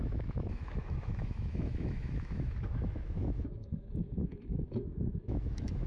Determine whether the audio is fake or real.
fake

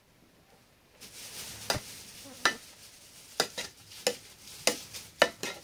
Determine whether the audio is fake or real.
real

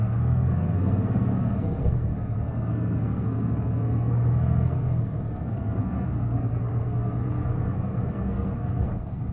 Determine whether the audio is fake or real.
fake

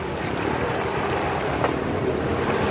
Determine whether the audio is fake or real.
real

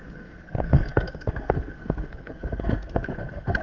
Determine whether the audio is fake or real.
fake